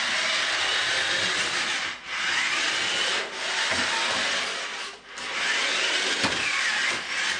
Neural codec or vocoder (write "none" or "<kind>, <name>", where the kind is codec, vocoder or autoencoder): none